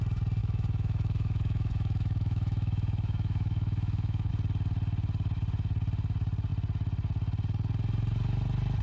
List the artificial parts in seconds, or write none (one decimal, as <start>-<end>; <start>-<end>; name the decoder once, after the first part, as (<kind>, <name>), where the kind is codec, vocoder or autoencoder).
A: 0.4-4.3 (autoencoder, DAC-VAE)